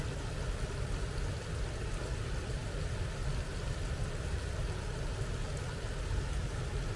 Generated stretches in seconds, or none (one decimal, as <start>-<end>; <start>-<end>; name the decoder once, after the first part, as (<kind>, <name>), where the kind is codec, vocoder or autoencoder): none